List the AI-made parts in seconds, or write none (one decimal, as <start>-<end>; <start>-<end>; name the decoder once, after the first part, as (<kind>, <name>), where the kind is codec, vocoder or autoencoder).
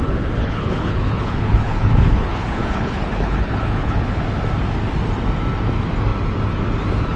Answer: 0.4-4.2 (codec, HILCodec)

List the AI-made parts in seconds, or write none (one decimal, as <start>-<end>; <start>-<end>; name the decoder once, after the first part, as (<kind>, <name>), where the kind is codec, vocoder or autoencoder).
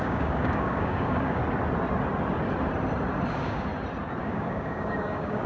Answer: 0.0-1.4 (codec, DAC); 3.3-3.7; 4.2-5.5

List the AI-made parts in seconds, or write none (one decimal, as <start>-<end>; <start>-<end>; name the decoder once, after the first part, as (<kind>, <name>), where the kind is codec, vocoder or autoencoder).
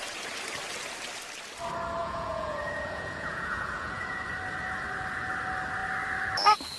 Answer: 2.0-4.2 (vocoder, Vocos)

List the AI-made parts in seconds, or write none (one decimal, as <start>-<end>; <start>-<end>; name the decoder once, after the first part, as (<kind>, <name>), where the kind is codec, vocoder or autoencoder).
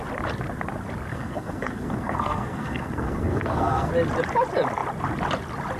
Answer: 1.1-3.9 (codec, SNAC)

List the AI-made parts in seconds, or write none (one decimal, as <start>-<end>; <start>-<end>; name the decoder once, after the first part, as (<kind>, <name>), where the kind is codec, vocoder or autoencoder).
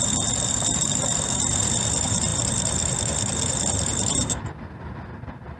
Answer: none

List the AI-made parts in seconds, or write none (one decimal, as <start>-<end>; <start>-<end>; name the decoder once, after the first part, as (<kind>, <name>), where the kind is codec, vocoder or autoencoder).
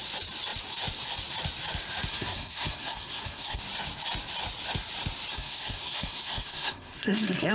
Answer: 2.1-3.6 (codec, SNAC); 5.3-7.5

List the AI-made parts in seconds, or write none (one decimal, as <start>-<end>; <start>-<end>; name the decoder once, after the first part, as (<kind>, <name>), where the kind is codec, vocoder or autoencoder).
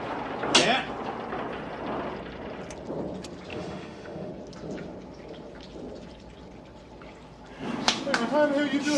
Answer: 3.5-4.3 (autoencoder, DAC-VAE)